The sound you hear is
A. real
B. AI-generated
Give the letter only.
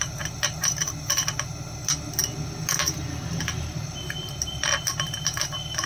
A